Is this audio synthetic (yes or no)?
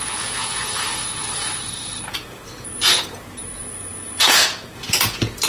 yes